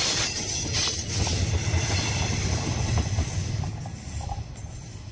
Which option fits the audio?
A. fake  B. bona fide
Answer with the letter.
B